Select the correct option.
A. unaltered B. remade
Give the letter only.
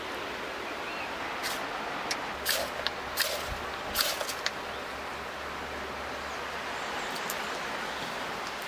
A